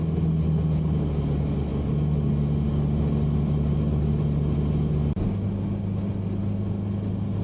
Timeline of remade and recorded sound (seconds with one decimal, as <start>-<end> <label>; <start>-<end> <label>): 0.0-7.4 recorded